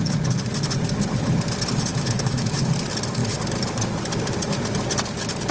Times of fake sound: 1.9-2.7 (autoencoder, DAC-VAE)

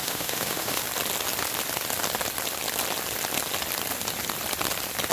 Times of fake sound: 0.0-0.8 (autoencoder, DAC-VAE)

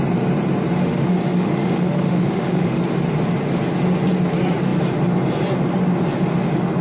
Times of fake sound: 0.8-2.8 (autoencoder, DAC-VAE)

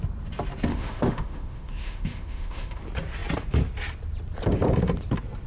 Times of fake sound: 0.7-2.8 (autoencoder, DAC-VAE)

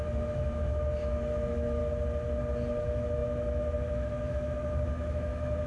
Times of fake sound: 0.0-1.8 (autoencoder, DAC-VAE); 2.8-5.7

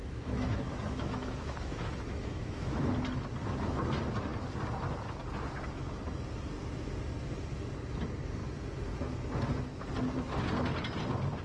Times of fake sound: 0.0-2.8 (autoencoder, DAC-VAE)

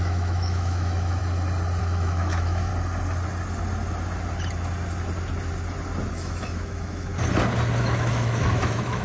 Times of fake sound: 0.0-1.2 (autoencoder, DAC-VAE); 1.8-2.7; 6.1-7.1; 7.8-9.0

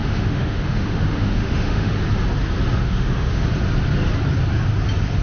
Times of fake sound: 0.0-1.9 (autoencoder, DAC-VAE); 2.8-3.4